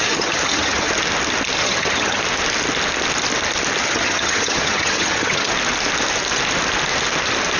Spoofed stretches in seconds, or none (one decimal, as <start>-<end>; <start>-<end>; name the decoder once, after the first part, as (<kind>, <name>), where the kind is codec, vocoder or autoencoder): 0.0-0.9 (vocoder, HiFi-GAN); 1.6-2.2; 3.8-5.5